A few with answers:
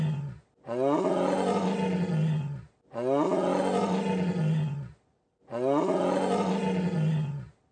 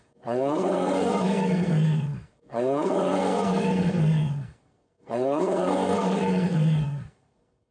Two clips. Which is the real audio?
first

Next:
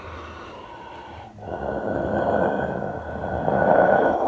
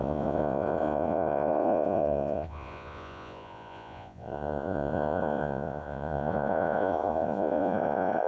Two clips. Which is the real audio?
first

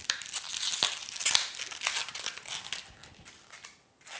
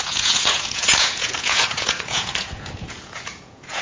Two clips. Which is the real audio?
first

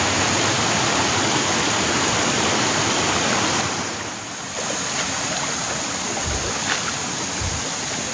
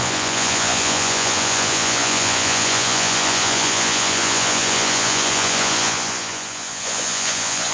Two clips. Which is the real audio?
first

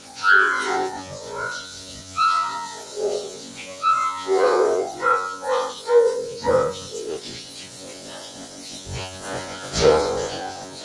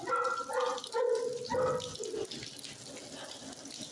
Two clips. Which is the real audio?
second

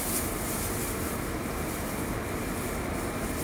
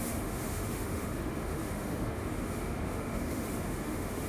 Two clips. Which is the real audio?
first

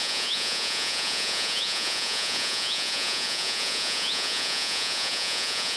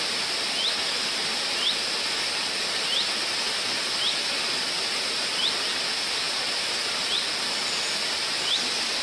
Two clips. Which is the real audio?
second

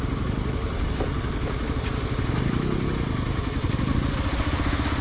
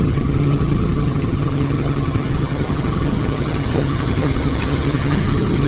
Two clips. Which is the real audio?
first